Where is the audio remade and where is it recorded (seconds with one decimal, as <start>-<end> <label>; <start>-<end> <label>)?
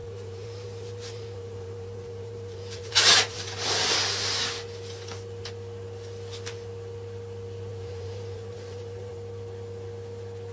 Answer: 0.0-3.7 remade; 3.7-7.7 recorded; 7.7-9.1 remade; 9.1-10.5 recorded